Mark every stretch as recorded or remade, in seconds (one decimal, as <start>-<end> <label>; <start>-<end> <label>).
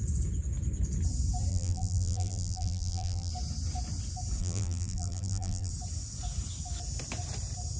0.0-1.5 recorded; 1.5-3.3 remade; 3.3-4.4 recorded; 4.4-5.7 remade; 5.7-7.8 recorded